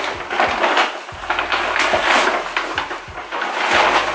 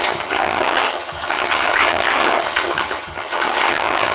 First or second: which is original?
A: first